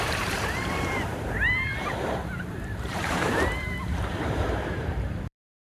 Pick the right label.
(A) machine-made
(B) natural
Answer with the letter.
A